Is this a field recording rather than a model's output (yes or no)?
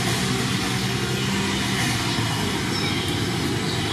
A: yes